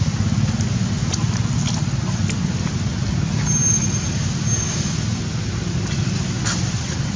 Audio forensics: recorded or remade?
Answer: recorded